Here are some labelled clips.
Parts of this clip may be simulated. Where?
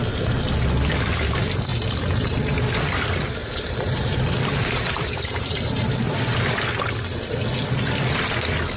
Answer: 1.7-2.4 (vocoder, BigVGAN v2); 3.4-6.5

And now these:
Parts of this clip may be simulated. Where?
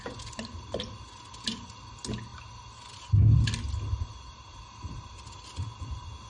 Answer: none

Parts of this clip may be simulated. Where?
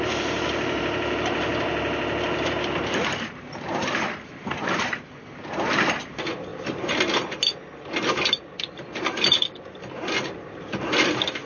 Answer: 0.0-1.5 (vocoder, BigVGAN v2); 3.8-6.5; 8.4-11.5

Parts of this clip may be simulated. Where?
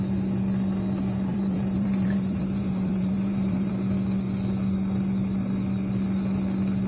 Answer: 1.3-3.7 (vocoder, BigVGAN v2)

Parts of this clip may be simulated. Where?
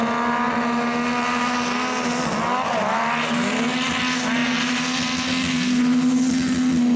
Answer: none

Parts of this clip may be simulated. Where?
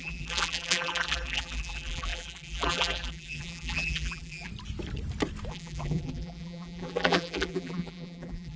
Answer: 0.0-4.5 (vocoder, BigVGAN v2); 5.5-8.6